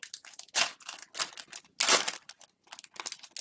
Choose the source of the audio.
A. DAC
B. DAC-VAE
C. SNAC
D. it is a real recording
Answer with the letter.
D